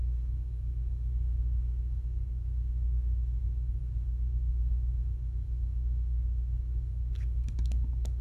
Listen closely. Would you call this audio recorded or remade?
remade